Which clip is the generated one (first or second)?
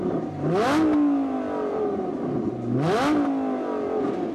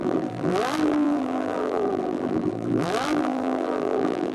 second